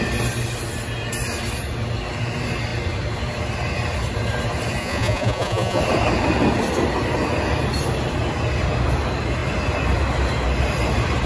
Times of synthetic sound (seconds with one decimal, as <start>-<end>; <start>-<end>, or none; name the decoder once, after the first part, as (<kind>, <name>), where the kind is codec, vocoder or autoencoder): 4.8-5.8 (vocoder, Vocos)